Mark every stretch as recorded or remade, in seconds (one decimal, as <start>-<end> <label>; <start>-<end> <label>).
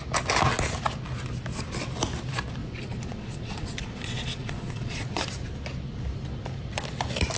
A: 0.0-2.6 recorded; 2.6-5.2 remade; 5.2-7.4 recorded